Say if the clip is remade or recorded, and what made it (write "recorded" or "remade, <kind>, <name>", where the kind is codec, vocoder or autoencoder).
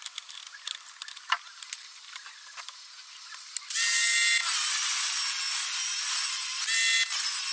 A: recorded